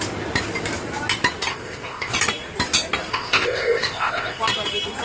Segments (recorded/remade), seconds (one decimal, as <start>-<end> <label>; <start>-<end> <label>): 0.0-1.5 recorded; 1.5-2.1 remade; 2.1-3.1 recorded; 3.1-4.4 remade; 4.4-5.0 recorded